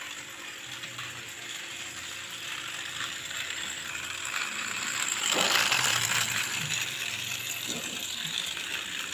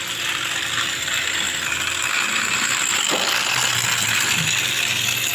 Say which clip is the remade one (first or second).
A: first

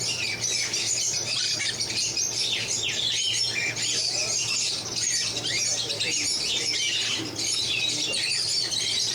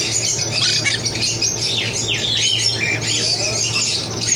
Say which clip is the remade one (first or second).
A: first